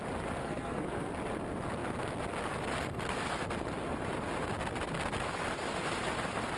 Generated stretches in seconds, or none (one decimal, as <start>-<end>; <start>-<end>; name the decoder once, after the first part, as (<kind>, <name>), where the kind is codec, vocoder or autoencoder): 0.4-1.1 (codec, SNAC)